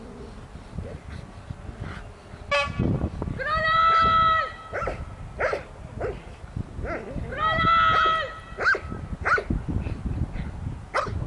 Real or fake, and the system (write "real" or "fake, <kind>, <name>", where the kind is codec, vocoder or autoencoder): real